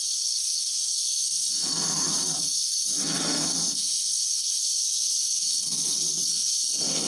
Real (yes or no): no